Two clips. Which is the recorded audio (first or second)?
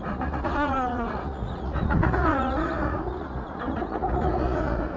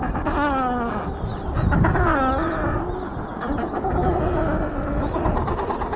second